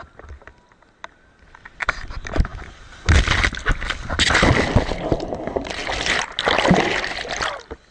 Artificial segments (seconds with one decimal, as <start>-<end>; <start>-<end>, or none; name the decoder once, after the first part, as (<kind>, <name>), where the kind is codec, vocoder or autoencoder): none